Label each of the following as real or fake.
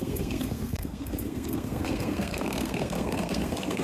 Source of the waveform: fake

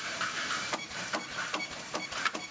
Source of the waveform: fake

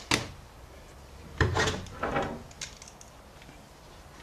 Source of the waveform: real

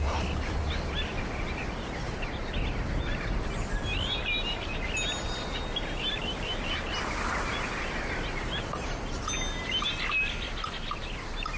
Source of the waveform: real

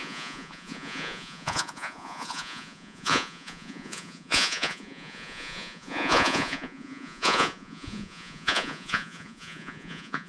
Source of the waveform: fake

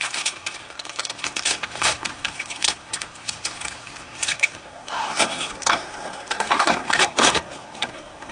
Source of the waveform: fake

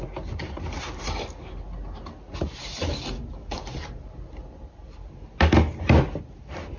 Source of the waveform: real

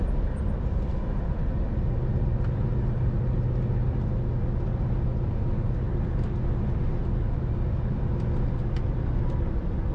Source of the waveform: real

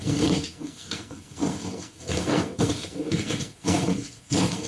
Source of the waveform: fake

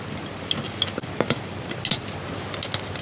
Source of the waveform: real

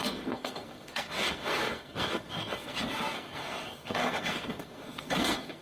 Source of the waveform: fake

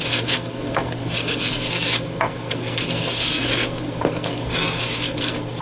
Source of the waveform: fake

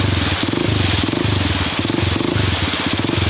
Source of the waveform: real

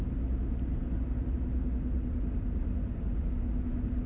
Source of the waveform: real